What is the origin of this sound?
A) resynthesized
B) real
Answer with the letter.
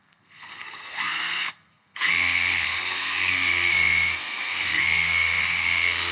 A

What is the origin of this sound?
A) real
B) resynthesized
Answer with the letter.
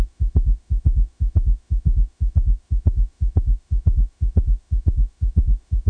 B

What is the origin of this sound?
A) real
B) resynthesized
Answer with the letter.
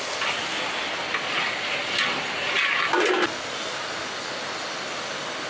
A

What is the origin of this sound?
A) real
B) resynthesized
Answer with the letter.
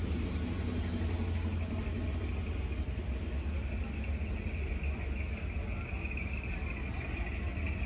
A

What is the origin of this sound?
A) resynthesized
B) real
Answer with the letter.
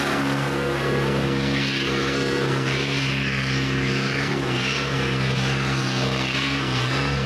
A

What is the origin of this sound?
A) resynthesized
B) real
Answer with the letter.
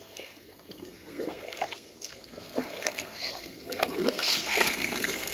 A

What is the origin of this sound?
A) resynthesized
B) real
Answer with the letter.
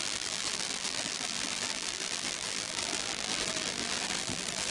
A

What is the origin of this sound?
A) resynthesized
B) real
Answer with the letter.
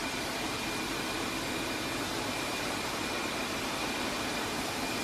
A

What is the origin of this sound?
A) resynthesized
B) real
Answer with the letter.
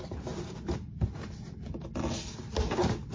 A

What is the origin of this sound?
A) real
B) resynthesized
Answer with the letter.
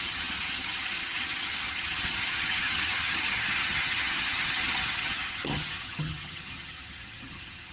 B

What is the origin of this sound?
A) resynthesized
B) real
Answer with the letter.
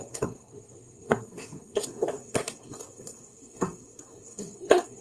A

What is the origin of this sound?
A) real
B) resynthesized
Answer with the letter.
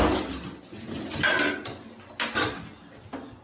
A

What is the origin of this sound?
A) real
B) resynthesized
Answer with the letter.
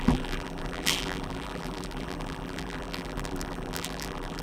B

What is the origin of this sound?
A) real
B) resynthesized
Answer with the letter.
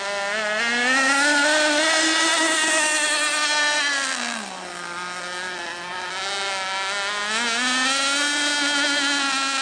A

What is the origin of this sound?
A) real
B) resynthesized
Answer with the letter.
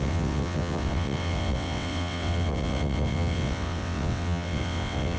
B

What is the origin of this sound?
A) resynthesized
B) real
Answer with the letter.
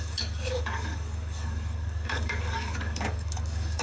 A